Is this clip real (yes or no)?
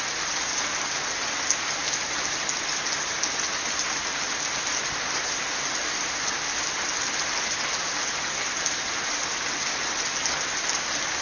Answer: yes